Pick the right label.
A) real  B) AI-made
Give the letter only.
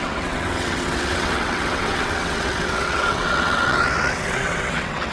B